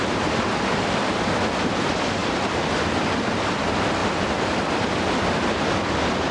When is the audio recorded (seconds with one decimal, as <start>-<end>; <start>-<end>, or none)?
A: 0.0-6.3